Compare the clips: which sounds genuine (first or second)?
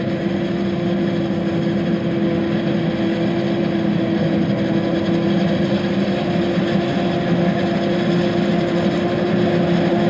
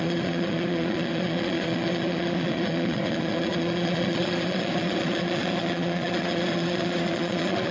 first